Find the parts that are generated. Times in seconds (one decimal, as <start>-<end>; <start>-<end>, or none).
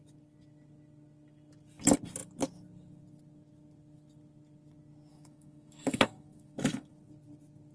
5.1-6.9